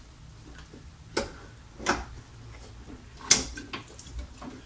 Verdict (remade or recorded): recorded